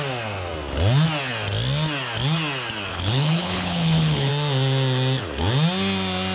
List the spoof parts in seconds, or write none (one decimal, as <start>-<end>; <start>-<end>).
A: 2.9-4.3